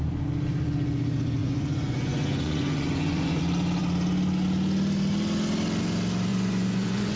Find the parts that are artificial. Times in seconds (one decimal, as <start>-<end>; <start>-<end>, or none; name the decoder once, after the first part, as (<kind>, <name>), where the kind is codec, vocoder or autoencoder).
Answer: 1.4-3.4 (vocoder, Vocos); 6.3-7.2